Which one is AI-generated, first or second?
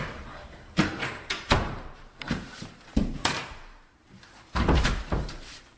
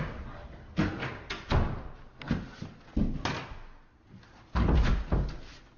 first